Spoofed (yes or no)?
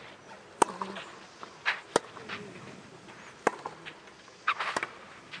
no